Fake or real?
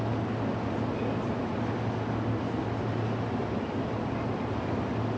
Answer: real